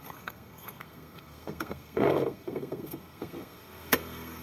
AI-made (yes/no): yes